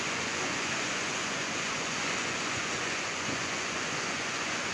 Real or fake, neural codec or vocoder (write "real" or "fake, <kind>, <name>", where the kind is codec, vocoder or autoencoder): fake, vocoder, Vocos